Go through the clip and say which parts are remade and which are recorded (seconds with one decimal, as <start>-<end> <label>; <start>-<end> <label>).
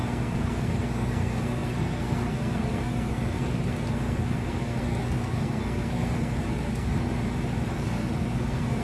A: 0.0-7.1 remade; 7.1-7.7 recorded; 7.7-8.8 remade